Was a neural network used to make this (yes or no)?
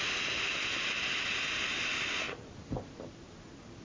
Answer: no